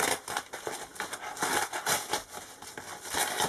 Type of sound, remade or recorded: recorded